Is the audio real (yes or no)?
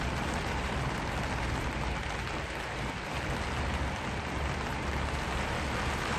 yes